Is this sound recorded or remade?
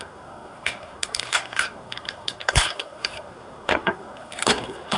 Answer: remade